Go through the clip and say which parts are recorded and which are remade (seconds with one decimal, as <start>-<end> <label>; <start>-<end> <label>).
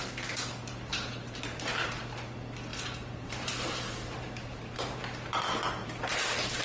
0.0-0.9 recorded; 0.9-2.0 remade; 2.0-2.7 recorded; 2.7-5.0 remade; 5.0-5.8 recorded; 5.8-6.6 remade